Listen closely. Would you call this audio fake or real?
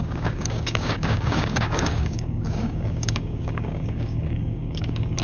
fake